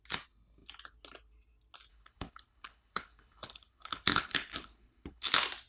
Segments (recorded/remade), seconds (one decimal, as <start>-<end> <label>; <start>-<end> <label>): 0.0-1.9 recorded; 1.9-5.3 remade; 5.3-5.7 recorded